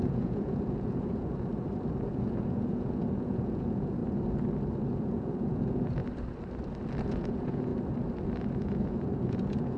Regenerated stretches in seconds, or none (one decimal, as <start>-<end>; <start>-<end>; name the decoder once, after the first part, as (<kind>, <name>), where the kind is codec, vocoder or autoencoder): 0.0-1.5 (vocoder, Vocos); 2.1-4.0; 4.9-6.0; 7.0-7.7; 8.5-9.8